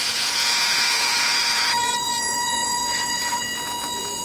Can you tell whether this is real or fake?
fake